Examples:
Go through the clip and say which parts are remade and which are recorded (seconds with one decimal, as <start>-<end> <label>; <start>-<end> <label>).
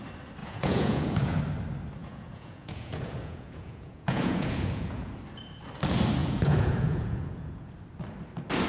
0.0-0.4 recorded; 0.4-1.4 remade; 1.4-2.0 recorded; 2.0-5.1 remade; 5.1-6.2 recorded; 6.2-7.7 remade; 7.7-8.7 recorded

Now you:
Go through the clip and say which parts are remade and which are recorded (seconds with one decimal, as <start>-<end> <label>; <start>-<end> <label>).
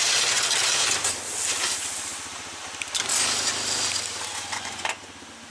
0.0-4.3 recorded; 4.3-5.0 remade; 5.0-5.5 recorded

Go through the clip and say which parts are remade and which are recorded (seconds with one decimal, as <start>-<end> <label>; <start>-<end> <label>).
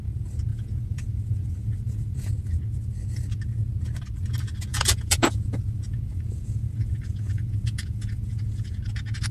0.0-0.5 recorded; 0.5-2.3 remade; 2.3-4.7 recorded; 4.7-8.8 remade; 8.8-9.3 recorded